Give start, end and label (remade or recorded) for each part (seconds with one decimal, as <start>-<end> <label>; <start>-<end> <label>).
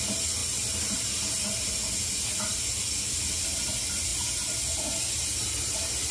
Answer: 0.0-6.1 recorded